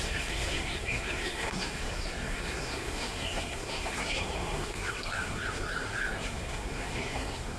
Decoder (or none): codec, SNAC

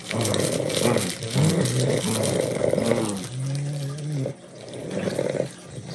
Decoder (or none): none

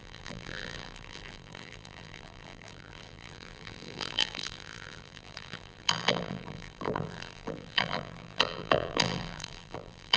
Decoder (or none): vocoder, BigVGAN v2